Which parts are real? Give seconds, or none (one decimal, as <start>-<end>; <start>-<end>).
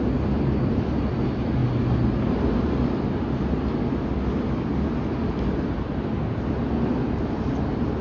0.0-8.0